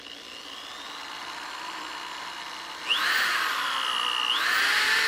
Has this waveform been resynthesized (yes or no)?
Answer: no